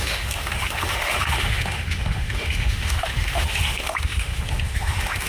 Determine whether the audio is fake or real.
fake